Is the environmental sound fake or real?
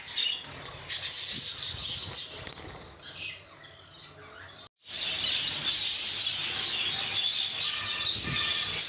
real